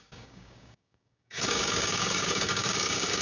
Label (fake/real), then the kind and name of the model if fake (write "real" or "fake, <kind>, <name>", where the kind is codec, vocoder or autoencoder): fake, codec, DAC